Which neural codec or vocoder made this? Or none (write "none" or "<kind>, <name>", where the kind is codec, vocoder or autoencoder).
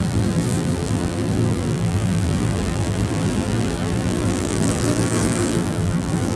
vocoder, BigVGAN v2